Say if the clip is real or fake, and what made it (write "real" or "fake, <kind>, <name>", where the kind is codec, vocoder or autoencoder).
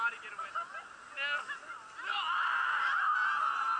real